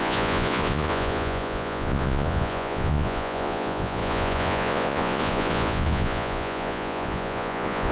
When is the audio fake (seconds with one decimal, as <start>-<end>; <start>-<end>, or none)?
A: 0.0-7.9